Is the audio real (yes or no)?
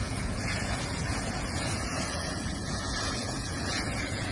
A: no